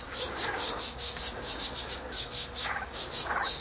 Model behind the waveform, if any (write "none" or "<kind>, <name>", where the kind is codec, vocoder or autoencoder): codec, DAC